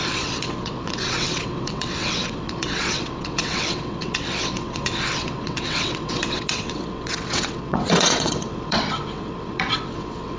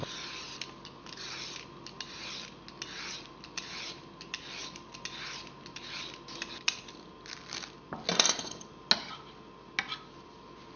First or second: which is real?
second